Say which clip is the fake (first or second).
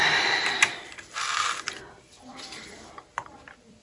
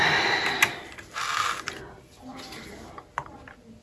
first